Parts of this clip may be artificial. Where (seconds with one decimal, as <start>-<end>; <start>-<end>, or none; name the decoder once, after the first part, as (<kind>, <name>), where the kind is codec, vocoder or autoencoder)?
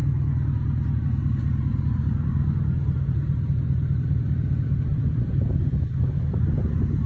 1.0-7.1 (vocoder, BigVGAN v2)